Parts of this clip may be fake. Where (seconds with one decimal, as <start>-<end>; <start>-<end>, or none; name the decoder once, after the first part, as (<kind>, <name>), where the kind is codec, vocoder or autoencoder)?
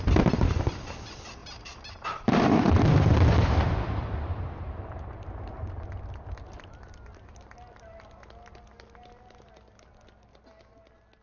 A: 1.4-5.7 (vocoder, BigVGAN v2)